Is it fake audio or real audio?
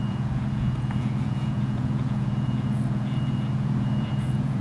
fake